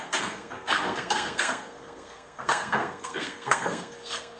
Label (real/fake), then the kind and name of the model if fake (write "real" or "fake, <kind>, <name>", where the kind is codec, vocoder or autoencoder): fake, codec, SNAC